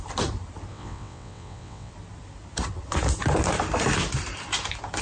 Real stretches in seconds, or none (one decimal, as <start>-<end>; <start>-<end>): 0.0-0.7; 1.9-5.0